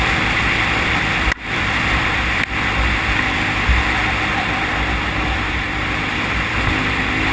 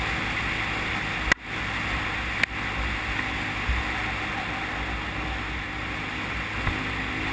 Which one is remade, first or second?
first